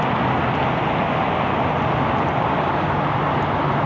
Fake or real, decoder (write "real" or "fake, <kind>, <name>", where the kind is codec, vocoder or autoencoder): real